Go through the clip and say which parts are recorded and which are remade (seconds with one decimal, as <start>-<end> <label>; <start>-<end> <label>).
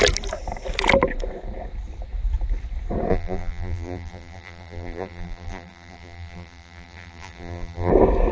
0.0-3.1 recorded; 3.1-7.9 remade; 7.9-8.3 recorded